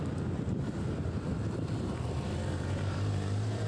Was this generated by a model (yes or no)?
yes